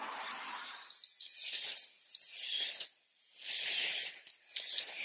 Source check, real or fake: real